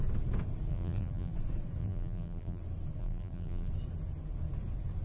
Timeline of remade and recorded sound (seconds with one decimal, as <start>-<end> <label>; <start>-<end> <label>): 0.0-0.7 recorded; 0.7-1.3 remade; 1.3-1.8 recorded; 1.8-2.6 remade; 2.6-3.0 recorded; 3.0-3.7 remade; 3.7-5.0 recorded